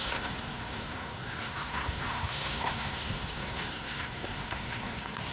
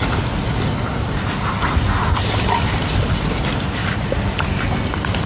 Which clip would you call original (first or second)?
second